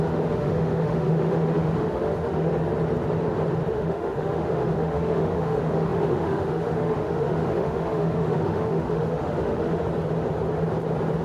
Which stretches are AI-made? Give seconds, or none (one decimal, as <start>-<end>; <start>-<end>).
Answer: 0.0-2.5; 3.7-9.8